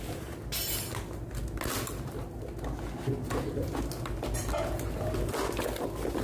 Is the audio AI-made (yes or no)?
no